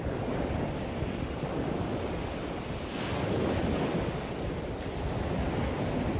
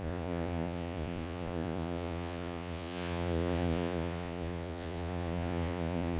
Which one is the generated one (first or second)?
second